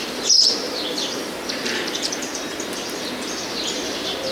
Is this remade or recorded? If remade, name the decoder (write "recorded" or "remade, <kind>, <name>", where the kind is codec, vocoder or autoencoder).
remade, vocoder, BigVGAN v2